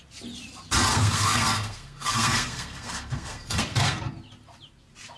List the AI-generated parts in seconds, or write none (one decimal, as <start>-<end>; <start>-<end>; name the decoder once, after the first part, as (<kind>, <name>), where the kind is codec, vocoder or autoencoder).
0.9-4.0 (codec, SNAC)